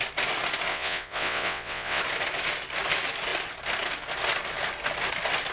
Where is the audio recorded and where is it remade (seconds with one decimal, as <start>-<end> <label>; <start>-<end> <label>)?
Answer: 0.0-0.7 recorded; 0.7-2.0 remade; 2.0-5.5 recorded